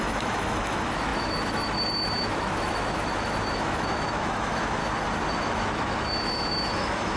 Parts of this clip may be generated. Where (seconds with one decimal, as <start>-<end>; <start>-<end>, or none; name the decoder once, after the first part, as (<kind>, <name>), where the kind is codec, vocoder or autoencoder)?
0.0-4.8 (autoencoder, DAC-VAE); 5.4-7.2